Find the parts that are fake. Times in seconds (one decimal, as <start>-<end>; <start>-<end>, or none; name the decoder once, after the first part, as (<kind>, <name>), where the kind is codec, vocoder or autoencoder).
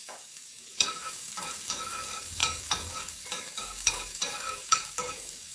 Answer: 0.0-5.5 (codec, DAC)